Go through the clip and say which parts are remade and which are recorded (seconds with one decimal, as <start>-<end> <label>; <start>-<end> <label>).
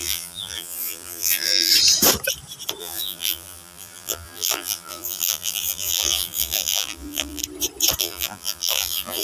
0.0-1.7 remade; 1.7-2.8 recorded; 2.8-7.4 remade; 7.4-8.0 recorded; 8.0-9.2 remade